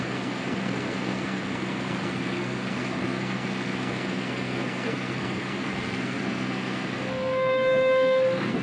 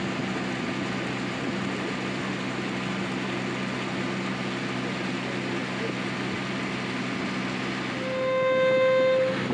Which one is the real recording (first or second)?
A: second